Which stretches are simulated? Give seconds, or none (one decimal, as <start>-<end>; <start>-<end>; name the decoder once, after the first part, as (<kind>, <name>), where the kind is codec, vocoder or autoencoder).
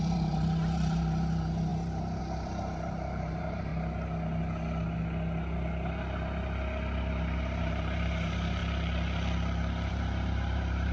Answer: 0.0-3.7 (vocoder, BigVGAN v2); 7.6-8.6; 9.9-10.9